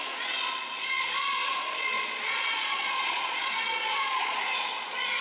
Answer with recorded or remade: remade